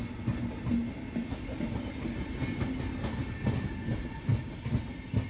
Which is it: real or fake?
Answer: real